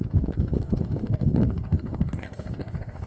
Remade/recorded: remade